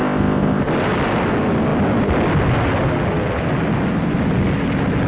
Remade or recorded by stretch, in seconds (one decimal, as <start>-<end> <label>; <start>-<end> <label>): 0.0-0.6 remade; 0.6-5.1 recorded